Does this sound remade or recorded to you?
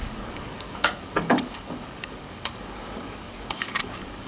remade